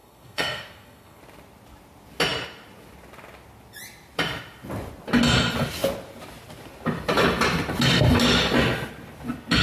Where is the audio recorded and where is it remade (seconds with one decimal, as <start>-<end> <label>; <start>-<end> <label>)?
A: 0.0-1.2 remade; 1.2-9.6 recorded